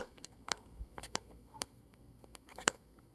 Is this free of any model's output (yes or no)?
no